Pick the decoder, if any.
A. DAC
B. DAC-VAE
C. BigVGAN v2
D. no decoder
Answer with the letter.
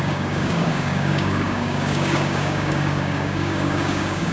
A